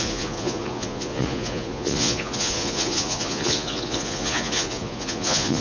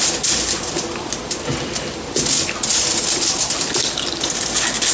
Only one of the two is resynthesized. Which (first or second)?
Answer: first